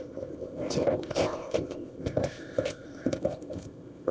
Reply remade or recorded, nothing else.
remade